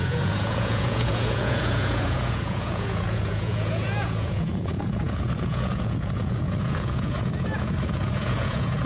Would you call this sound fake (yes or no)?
yes